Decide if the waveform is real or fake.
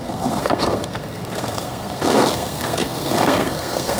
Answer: fake